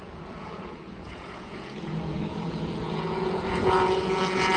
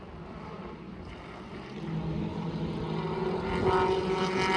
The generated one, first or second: first